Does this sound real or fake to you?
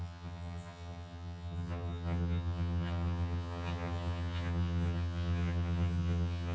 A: fake